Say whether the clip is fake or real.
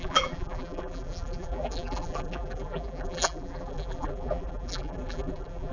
fake